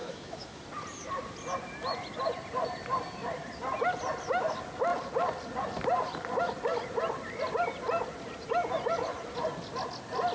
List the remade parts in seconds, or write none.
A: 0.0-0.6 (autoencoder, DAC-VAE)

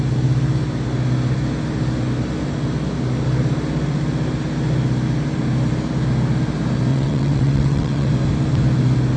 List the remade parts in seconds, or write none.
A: 6.9-8.1 (vocoder, WaveNeXt)

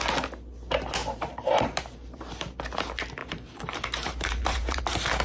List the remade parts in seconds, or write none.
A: 1.0-2.3 (vocoder, BigVGAN v2); 3.2-4.8

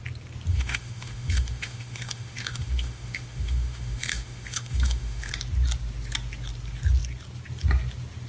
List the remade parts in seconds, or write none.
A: 0.5-5.3 (autoencoder, DAC-VAE)